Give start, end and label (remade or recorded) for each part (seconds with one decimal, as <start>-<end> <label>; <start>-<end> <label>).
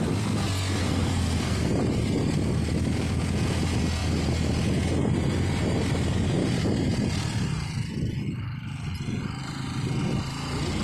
0.0-0.8 recorded; 0.8-1.7 remade; 1.7-10.8 recorded